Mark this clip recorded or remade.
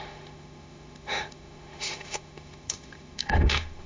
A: remade